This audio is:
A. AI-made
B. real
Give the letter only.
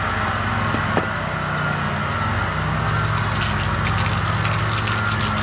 B